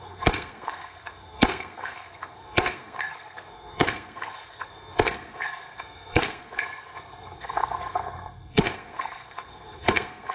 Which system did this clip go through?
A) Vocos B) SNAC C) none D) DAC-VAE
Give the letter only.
B